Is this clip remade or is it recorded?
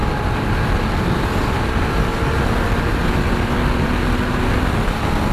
recorded